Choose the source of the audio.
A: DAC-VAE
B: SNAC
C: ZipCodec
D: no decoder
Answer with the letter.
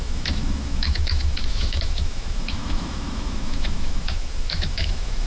A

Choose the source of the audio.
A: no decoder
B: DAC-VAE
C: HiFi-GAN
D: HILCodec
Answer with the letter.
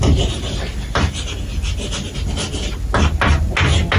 A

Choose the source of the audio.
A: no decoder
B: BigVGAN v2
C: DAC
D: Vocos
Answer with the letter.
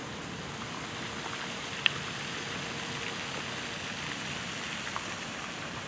A